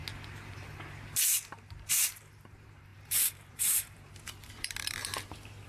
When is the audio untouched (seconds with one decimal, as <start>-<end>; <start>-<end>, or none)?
0.0-1.1